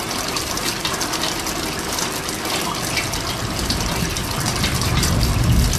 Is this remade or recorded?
recorded